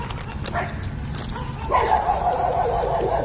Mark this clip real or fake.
real